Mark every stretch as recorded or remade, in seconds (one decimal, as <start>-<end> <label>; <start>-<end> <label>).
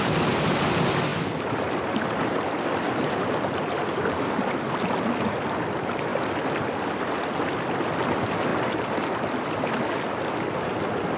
0.0-11.2 recorded